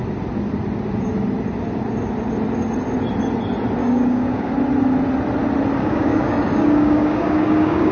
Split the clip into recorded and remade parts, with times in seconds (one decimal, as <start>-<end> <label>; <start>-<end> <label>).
0.0-3.8 recorded; 3.8-4.5 remade; 4.5-5.8 recorded; 5.8-7.9 remade